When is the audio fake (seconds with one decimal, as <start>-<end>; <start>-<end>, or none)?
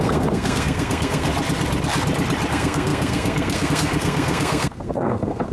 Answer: 0.0-1.3; 2.5-5.5